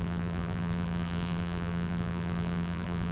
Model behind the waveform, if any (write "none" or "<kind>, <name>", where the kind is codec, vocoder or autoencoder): vocoder, BigVGAN v2